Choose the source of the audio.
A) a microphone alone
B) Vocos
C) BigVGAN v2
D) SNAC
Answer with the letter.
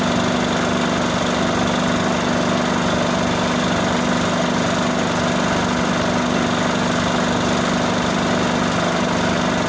A